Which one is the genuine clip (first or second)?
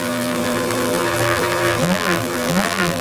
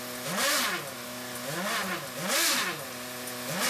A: second